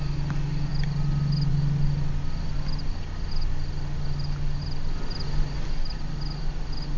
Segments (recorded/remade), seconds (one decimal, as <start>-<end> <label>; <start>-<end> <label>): 0.0-7.0 recorded